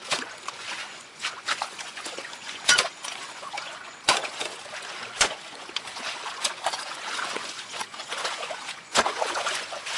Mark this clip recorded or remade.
remade